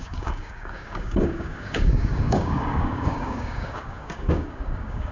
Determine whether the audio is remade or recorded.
remade